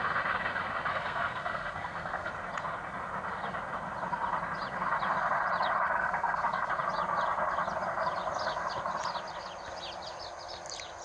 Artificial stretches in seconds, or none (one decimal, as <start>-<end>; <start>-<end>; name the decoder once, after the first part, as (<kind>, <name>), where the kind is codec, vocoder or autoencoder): 0.9-2.3 (codec, SNAC); 6.0-6.7